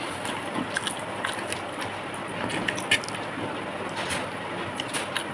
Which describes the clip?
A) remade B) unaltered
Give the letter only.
B